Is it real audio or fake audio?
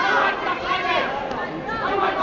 real